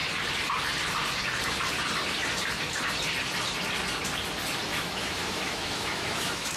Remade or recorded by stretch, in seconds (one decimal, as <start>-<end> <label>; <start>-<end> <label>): 0.0-4.7 recorded; 4.7-6.6 remade